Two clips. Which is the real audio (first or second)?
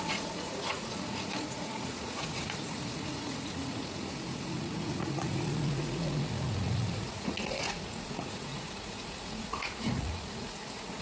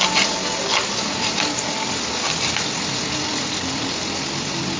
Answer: second